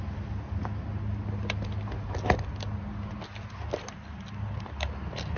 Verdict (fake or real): real